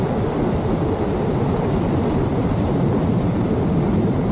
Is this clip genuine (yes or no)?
yes